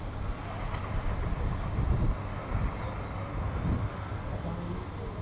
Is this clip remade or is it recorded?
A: recorded